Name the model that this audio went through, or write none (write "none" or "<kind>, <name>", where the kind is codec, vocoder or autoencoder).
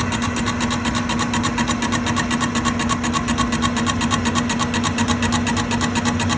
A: none